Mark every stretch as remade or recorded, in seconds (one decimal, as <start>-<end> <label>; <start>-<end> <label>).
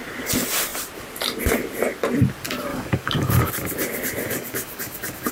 0.0-2.7 recorded; 2.7-3.5 remade; 3.5-4.2 recorded; 4.2-5.3 remade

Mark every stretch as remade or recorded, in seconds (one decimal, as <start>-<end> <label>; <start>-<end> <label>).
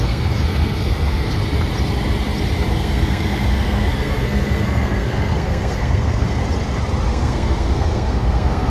0.0-1.4 remade; 1.4-2.7 recorded; 2.7-6.4 remade; 6.4-7.1 recorded; 7.1-8.7 remade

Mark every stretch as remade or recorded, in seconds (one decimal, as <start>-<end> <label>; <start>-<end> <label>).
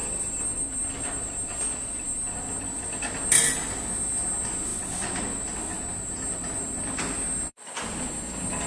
0.0-8.7 recorded